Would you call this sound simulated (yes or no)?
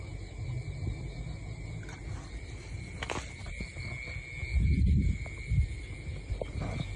no